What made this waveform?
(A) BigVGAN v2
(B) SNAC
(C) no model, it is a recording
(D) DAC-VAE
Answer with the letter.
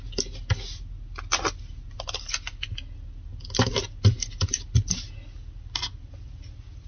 C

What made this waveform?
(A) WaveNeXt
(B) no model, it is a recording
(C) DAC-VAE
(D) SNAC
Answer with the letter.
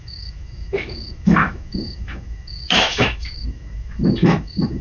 C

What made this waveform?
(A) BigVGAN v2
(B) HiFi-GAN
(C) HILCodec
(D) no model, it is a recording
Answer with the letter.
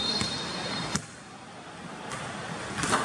D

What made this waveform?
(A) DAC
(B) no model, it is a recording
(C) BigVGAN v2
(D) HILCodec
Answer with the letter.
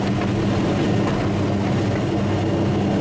B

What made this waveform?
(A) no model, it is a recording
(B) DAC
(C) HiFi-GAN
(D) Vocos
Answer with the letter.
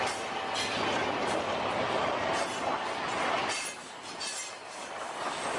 A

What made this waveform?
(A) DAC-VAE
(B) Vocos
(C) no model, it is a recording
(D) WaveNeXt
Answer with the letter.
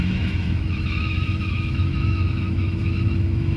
A